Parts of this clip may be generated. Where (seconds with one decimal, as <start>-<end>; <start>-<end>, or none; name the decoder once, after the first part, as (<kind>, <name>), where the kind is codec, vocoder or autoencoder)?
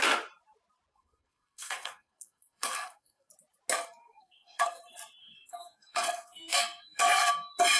0.9-3.3 (codec, SNAC); 4.0-4.8; 5.2-7.3